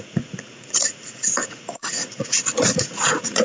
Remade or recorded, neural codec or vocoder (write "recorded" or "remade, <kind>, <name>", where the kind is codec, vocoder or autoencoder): remade, vocoder, Vocos